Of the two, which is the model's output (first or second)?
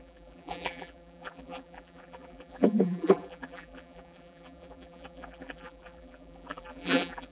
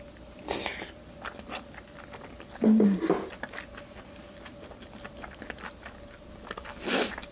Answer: first